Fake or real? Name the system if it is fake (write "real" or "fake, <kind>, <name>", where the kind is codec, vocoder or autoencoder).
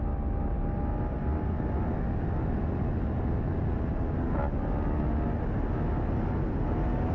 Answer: real